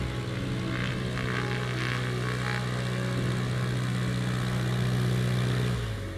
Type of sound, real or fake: real